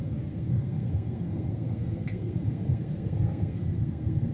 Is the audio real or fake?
fake